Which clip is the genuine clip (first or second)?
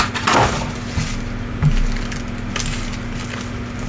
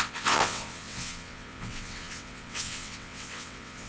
first